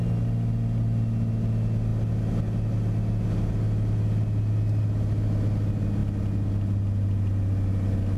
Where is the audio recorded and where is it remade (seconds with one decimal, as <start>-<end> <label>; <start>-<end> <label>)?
0.0-8.2 recorded